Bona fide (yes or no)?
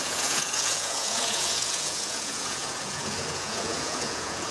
no